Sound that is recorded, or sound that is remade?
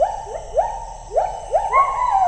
recorded